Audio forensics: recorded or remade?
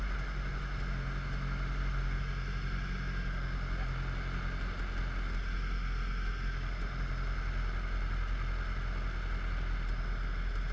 recorded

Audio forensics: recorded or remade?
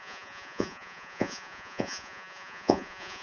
remade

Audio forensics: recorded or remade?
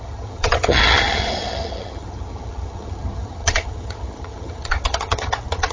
remade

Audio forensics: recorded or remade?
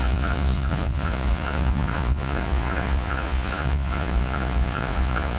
remade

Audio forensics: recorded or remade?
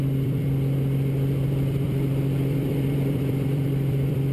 remade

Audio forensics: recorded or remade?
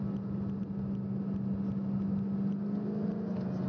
recorded